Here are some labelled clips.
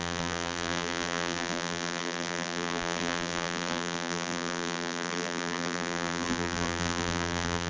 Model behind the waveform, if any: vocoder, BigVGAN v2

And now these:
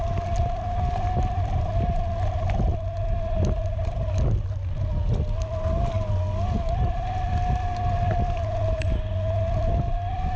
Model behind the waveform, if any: none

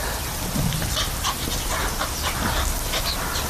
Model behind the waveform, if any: none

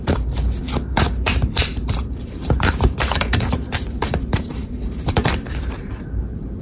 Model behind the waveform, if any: vocoder, BigVGAN v2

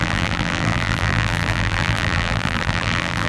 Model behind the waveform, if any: vocoder, BigVGAN v2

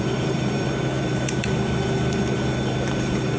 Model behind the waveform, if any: vocoder, BigVGAN v2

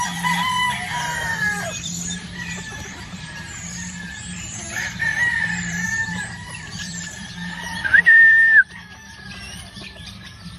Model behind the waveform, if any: vocoder, BigVGAN v2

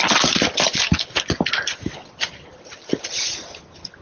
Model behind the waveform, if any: none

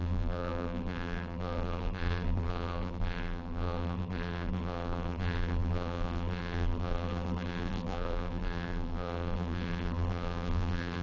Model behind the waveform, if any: vocoder, BigVGAN v2